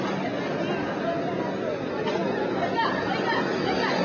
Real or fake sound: real